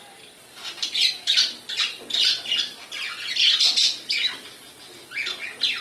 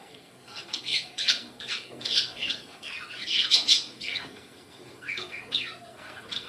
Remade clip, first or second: second